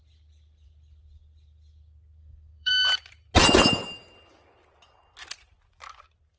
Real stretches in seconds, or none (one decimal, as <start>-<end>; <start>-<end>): 0.0-2.2; 2.7-6.4